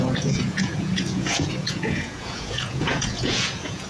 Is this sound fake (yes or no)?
yes